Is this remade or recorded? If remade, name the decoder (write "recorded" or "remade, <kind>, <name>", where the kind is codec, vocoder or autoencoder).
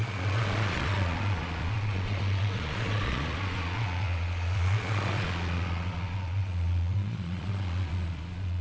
remade, vocoder, Vocos